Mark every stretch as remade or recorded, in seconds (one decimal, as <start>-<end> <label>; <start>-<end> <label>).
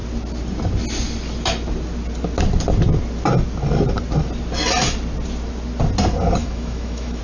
0.0-6.4 recorded; 6.4-7.2 remade